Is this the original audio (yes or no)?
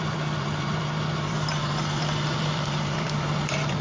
no